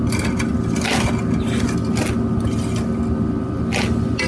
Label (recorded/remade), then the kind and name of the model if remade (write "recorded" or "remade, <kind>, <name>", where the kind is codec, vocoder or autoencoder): recorded